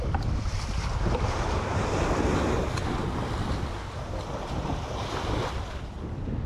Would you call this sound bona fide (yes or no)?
yes